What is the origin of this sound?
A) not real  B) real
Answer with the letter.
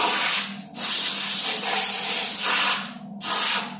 B